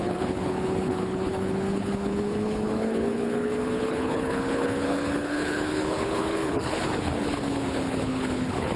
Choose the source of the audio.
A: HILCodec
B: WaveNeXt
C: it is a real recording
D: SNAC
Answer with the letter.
A